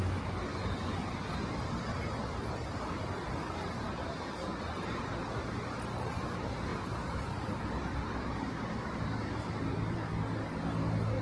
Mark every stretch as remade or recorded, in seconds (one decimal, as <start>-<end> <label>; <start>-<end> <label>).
0.0-6.7 recorded; 6.7-10.1 remade; 10.1-11.2 recorded